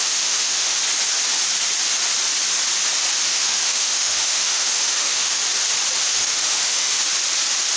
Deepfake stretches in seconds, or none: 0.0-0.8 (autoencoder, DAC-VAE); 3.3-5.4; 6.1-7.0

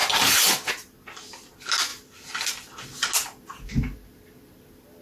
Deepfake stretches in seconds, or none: none